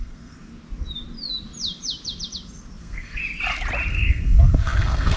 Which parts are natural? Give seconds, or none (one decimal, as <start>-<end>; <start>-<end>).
0.5-2.8; 3.2-3.9